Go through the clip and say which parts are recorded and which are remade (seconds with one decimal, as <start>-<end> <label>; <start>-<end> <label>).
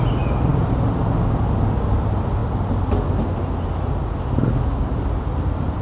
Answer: 0.0-5.8 recorded